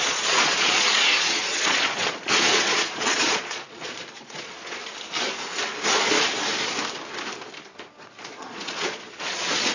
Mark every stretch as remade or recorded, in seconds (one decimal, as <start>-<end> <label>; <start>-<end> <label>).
0.0-4.8 remade; 4.8-8.0 recorded; 8.0-9.7 remade